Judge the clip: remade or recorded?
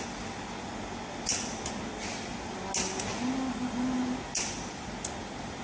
recorded